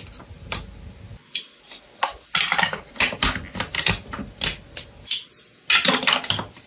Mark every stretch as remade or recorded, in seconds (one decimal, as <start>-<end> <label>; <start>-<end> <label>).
0.0-6.7 recorded